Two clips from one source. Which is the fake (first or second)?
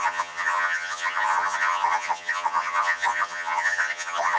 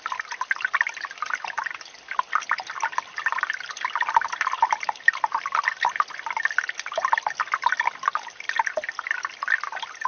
first